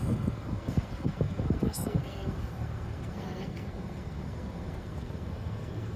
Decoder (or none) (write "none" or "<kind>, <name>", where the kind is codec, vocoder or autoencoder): codec, SNAC